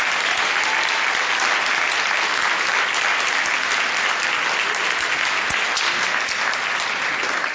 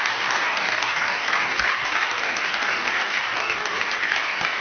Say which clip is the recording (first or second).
first